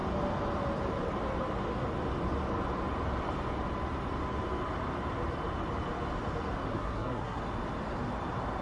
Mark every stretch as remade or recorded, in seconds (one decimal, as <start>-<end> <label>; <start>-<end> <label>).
0.0-6.7 recorded; 6.7-7.4 remade; 7.4-8.6 recorded